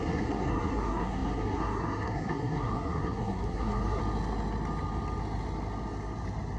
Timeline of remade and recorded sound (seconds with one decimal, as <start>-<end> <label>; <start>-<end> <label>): 0.0-4.0 remade; 4.0-6.6 recorded